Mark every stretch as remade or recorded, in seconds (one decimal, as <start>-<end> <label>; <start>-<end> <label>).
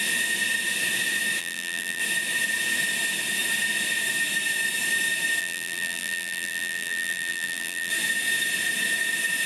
0.0-1.4 recorded; 1.4-2.0 remade; 2.0-5.4 recorded; 5.4-7.9 remade; 7.9-9.5 recorded